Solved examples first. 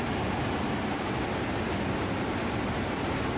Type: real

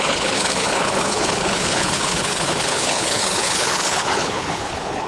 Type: fake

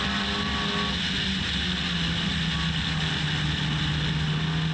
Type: real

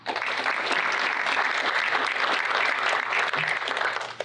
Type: real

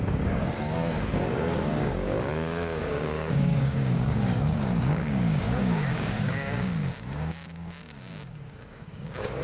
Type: fake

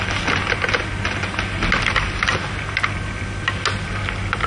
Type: real